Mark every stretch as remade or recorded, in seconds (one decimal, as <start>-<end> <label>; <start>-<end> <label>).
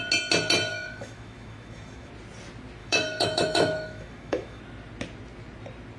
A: 0.0-0.7 recorded; 0.7-2.1 remade; 2.1-2.8 recorded; 2.8-4.6 remade; 4.6-6.0 recorded